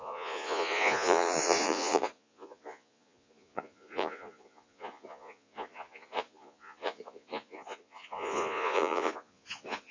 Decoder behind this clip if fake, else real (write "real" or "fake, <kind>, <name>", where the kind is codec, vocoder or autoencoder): fake, vocoder, Vocos